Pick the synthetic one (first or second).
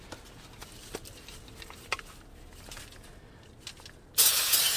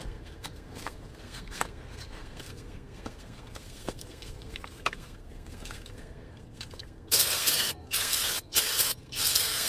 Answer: second